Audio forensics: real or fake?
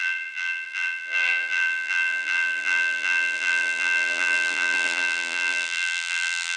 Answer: fake